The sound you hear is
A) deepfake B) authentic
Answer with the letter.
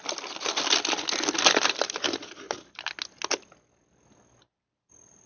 B